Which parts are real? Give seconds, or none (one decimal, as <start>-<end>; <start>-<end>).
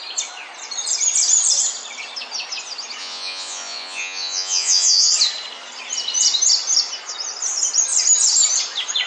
0.0-3.0; 5.1-9.1